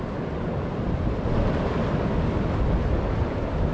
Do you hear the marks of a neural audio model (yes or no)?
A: no